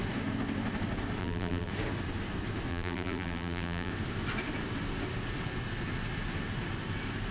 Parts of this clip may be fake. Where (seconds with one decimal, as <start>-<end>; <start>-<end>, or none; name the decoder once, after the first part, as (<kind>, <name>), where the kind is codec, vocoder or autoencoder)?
1.2-1.7 (vocoder, BigVGAN v2); 2.7-3.9